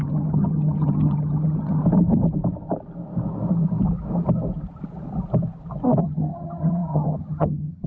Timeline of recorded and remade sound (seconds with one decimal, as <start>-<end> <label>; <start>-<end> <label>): 0.0-1.8 remade; 1.8-6.0 recorded; 6.0-7.9 remade